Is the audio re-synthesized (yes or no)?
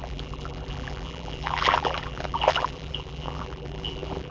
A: yes